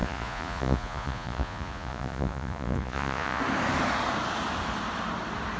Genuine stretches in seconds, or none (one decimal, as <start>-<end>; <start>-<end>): 3.4-5.6